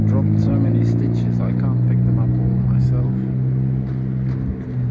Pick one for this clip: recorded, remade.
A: recorded